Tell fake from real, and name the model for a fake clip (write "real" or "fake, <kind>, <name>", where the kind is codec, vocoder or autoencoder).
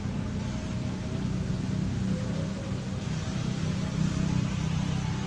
real